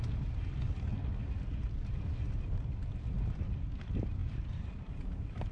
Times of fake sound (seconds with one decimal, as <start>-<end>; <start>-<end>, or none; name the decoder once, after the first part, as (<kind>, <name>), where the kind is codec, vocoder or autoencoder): 4.2-5.5 (vocoder, BigVGAN v2)